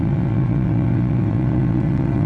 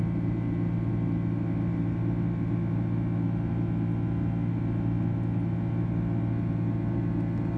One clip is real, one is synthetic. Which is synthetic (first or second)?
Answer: first